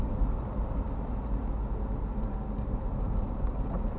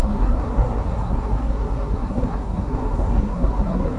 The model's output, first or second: second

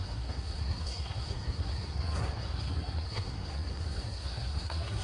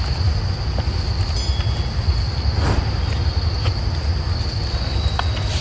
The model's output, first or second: first